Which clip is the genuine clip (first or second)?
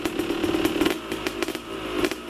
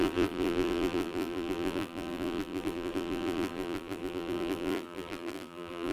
first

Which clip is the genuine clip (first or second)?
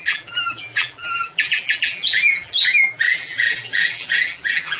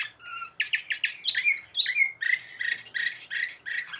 second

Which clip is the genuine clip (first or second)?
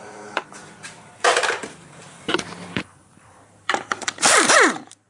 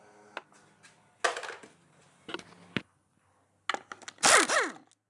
second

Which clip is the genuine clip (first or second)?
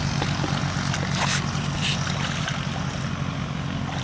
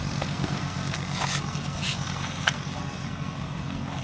first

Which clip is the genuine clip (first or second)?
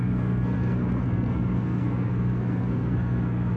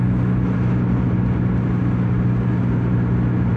second